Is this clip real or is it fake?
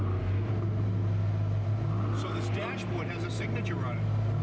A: real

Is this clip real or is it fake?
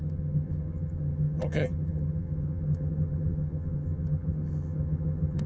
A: fake